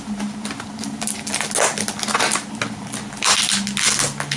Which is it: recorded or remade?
recorded